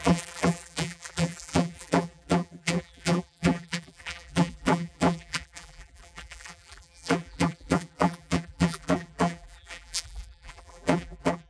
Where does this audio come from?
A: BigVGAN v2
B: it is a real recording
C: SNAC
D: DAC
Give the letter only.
A